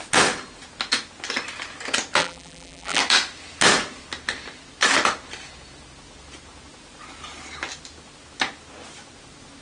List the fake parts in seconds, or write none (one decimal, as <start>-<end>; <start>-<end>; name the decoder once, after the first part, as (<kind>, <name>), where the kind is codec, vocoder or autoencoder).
2.2-3.0 (vocoder, BigVGAN v2)